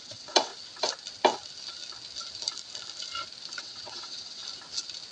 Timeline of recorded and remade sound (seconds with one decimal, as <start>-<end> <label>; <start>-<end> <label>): 0.0-0.5 remade; 0.5-3.6 recorded; 3.6-4.4 remade; 4.4-5.1 recorded